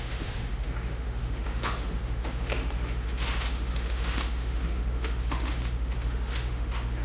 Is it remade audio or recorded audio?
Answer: remade